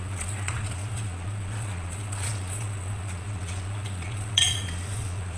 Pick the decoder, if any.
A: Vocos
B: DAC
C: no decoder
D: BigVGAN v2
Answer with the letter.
A